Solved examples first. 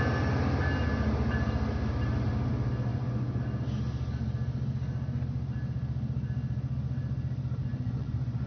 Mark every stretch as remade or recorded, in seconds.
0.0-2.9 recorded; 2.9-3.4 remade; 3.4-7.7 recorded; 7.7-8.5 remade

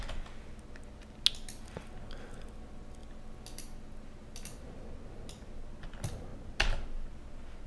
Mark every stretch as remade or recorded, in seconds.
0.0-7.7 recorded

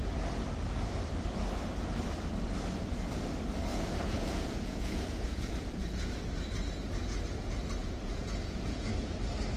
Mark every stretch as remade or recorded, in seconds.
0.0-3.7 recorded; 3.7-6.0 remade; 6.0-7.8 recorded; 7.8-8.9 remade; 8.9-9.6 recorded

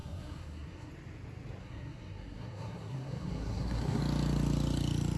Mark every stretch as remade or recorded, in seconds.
0.0-0.9 remade; 0.9-1.6 recorded; 1.6-4.0 remade; 4.0-5.2 recorded

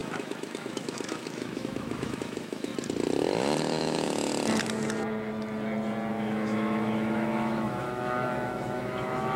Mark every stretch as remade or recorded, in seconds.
0.0-2.7 remade; 2.7-3.6 recorded; 3.6-4.3 remade; 4.3-6.1 recorded; 6.1-9.4 remade